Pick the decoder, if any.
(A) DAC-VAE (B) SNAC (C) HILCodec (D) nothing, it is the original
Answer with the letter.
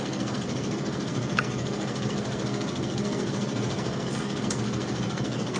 B